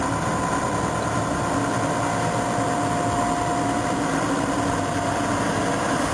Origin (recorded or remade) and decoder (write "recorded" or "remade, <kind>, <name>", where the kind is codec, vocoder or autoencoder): recorded